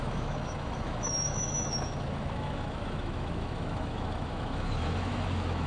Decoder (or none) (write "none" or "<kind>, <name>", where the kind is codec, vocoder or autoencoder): autoencoder, DAC-VAE